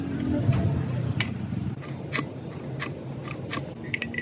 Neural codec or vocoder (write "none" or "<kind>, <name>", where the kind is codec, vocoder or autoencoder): none